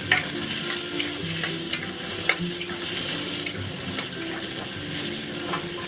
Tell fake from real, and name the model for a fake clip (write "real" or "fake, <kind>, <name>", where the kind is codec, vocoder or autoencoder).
real